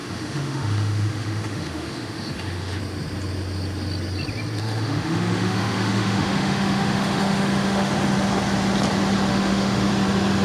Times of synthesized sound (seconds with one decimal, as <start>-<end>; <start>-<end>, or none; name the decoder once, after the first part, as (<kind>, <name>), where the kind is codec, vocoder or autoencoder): 0.0-2.8 (autoencoder, DAC-VAE); 4.6-7.9; 9.3-9.9